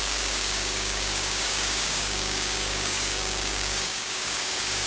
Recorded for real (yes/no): no